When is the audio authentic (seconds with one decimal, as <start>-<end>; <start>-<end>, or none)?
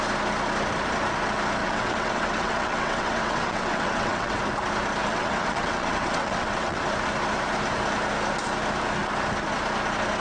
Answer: 0.0-1.6; 4.4-5.0; 6.8-10.2